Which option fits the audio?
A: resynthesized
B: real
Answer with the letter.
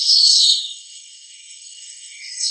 A